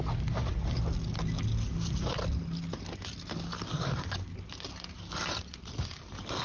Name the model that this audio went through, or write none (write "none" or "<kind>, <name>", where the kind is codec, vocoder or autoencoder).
none